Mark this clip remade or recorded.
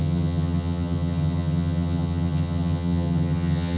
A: remade